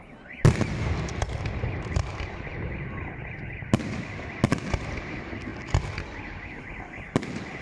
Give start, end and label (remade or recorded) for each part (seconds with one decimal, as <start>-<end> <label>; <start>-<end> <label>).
0.0-7.6 recorded